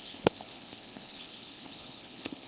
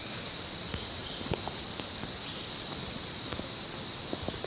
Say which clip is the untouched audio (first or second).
second